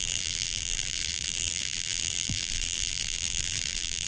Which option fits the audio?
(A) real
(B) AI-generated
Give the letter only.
B